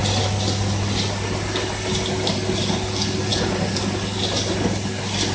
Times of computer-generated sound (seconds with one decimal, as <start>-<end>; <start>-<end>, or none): none